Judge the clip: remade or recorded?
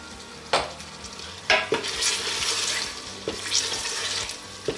recorded